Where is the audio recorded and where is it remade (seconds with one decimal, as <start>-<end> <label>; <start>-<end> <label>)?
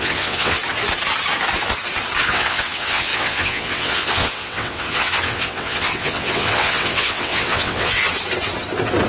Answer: 0.0-0.6 remade; 0.6-2.2 recorded; 2.2-8.0 remade; 8.0-9.1 recorded